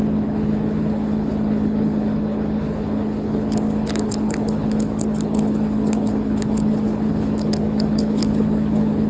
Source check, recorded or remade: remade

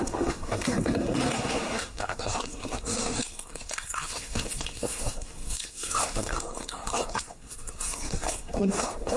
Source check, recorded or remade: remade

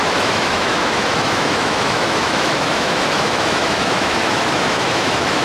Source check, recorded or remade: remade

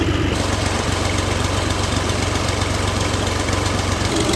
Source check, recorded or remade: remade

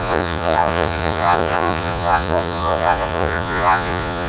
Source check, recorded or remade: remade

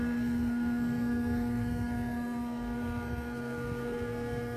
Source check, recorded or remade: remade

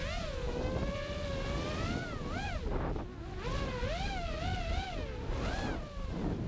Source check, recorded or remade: recorded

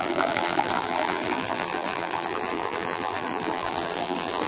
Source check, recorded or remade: remade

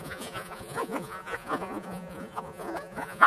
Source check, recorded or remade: remade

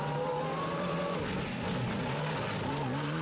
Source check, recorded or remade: recorded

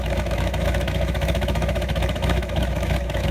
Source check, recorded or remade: remade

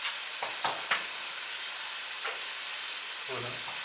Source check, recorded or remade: recorded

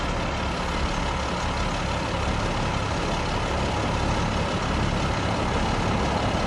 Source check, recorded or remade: recorded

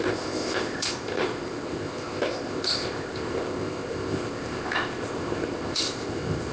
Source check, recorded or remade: remade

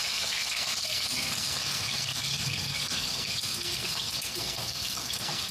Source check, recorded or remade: remade